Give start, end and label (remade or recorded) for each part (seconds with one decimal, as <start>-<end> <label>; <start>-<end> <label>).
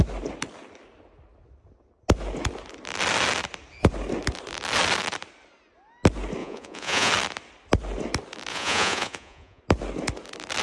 0.0-6.4 recorded; 6.4-7.1 remade; 7.1-8.5 recorded; 8.5-9.6 remade; 9.6-10.6 recorded